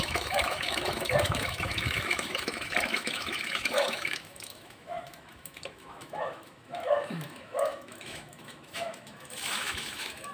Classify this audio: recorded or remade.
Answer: remade